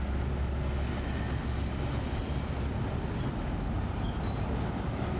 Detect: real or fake real